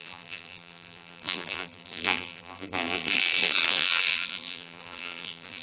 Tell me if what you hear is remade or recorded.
remade